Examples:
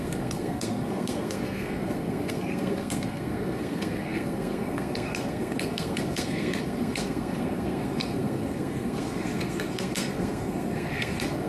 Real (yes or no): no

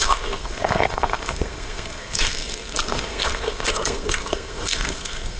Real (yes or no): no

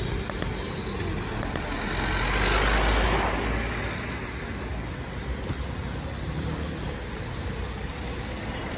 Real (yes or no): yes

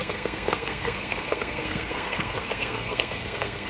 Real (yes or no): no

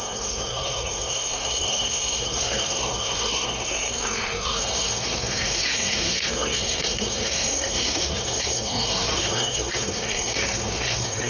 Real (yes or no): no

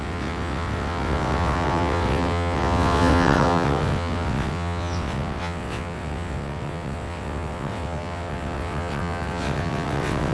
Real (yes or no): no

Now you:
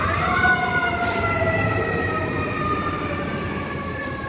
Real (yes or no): no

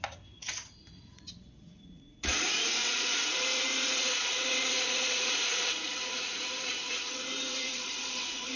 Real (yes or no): no